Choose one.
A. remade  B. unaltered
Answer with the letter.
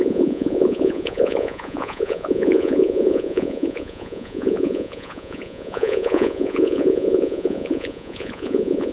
A